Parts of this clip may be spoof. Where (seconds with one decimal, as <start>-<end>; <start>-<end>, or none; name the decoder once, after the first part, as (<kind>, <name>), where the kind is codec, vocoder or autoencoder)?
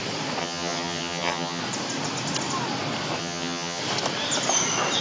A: 0.4-1.6 (vocoder, HiFi-GAN); 3.2-3.8